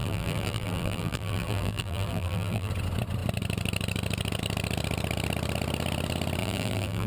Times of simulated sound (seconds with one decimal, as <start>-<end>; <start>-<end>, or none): 0.0-2.7; 6.4-7.1